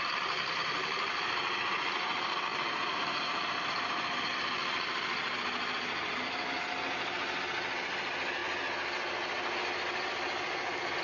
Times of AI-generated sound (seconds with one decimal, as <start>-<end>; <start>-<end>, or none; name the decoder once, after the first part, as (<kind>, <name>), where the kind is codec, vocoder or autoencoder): 2.5-4.2 (vocoder, BigVGAN v2)